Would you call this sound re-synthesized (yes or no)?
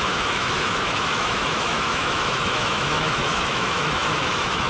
yes